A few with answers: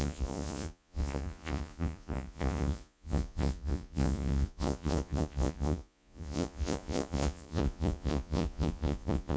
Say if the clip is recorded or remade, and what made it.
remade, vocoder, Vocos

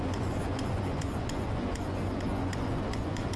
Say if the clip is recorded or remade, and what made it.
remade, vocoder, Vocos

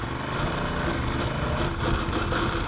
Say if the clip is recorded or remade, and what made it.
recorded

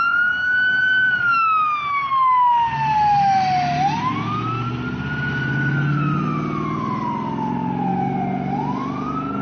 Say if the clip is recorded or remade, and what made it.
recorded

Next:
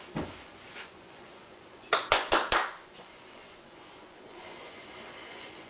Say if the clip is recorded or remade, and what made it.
remade, vocoder, Vocos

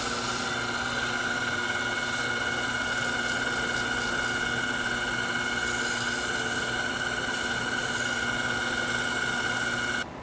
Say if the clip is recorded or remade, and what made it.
recorded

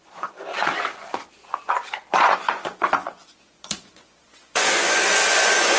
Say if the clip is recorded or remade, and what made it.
remade, vocoder, Vocos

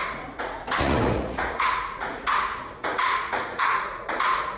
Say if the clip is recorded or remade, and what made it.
remade, vocoder, Vocos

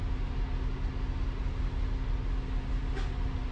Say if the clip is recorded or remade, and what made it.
recorded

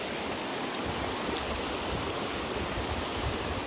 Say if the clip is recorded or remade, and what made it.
recorded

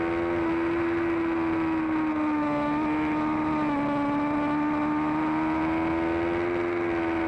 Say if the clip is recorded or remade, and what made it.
recorded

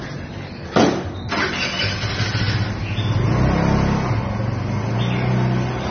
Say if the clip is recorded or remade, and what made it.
recorded